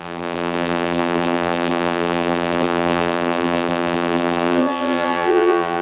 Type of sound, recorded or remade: remade